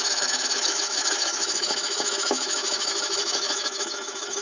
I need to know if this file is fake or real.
fake